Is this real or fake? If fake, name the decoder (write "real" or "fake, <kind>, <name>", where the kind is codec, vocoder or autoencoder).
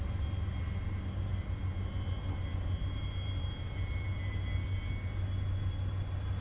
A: real